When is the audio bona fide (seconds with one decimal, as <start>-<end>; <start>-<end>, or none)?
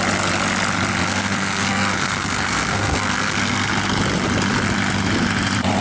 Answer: 0.0-1.0; 3.7-5.8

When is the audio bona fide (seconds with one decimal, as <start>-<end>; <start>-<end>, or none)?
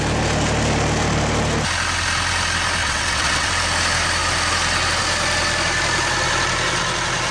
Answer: 0.0-2.8; 3.5-7.3